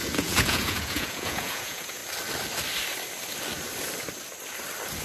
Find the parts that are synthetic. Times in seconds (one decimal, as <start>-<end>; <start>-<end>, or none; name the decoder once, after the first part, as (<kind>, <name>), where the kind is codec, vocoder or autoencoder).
0.0-2.0 (vocoder, Vocos)